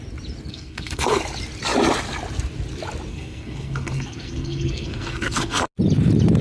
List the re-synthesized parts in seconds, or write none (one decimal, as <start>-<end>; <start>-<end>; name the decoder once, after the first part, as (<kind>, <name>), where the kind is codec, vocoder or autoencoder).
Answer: 0.5-1.2 (codec, SNAC); 3.1-5.6